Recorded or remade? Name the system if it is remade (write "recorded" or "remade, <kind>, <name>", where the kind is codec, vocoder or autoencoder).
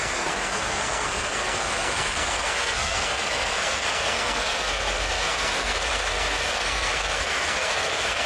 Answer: remade, codec, SNAC